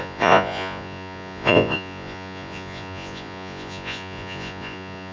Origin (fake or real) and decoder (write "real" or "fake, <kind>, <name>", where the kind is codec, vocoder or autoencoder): fake, vocoder, Vocos